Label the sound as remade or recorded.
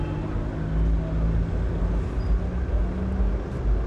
recorded